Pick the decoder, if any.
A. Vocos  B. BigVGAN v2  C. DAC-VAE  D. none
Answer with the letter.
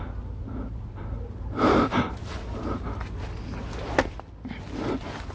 D